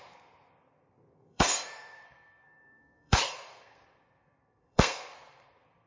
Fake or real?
fake